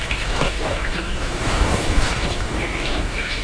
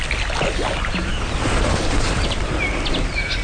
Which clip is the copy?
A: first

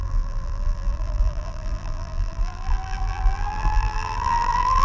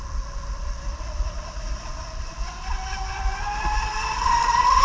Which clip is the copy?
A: first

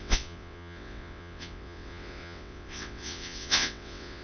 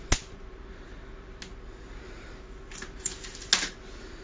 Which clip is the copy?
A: first